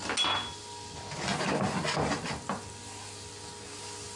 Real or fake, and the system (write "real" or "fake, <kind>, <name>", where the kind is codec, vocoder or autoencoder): real